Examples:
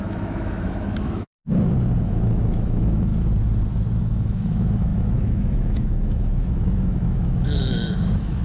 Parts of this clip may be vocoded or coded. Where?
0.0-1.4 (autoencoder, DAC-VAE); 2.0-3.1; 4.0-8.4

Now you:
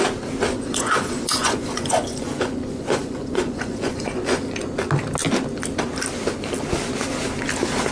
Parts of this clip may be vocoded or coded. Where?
0.5-4.4 (vocoder, Vocos)